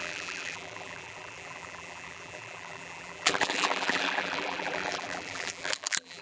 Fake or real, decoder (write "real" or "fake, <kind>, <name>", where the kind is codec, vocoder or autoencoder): fake, vocoder, BigVGAN v2